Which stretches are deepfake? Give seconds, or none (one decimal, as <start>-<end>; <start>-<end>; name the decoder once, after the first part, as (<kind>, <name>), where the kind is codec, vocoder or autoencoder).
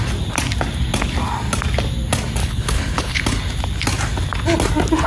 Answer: 2.4-3.2 (codec, HILCodec)